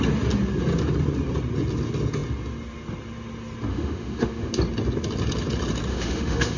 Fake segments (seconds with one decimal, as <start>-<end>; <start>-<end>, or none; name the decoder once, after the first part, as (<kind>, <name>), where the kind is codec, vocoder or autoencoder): 3.7-4.5 (autoencoder, DAC-VAE); 5.9-6.6